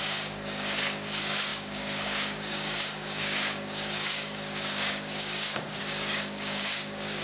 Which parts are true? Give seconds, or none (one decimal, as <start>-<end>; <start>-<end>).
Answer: none